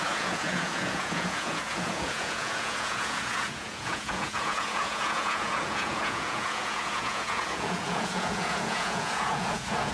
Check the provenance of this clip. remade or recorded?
remade